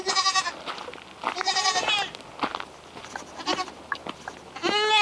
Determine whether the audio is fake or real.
real